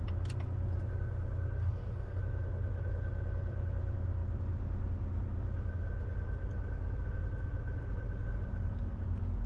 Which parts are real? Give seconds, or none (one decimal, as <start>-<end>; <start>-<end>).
0.0-1.6; 2.2-9.5